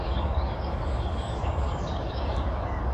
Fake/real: fake